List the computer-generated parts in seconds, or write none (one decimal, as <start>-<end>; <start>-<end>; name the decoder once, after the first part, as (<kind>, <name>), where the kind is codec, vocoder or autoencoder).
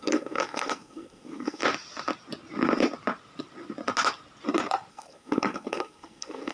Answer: 0.0-1.6 (codec, SNAC); 4.9-6.5